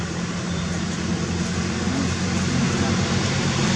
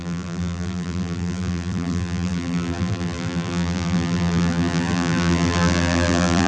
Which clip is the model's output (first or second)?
second